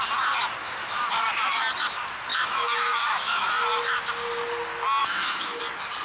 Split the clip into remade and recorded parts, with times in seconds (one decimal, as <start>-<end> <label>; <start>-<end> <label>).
0.0-0.6 recorded; 0.6-1.2 remade; 1.2-2.3 recorded; 2.3-3.5 remade; 3.5-5.0 recorded; 5.0-5.6 remade; 5.6-6.0 recorded